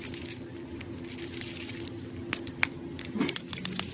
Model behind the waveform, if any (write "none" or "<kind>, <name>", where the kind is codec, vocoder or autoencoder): none